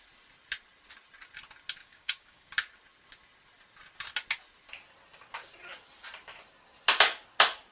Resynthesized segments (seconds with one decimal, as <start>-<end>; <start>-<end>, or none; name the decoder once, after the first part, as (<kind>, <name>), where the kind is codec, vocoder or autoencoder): 1.8-2.5 (codec, DAC)